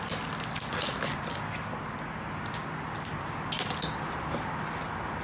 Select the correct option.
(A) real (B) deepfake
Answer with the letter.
A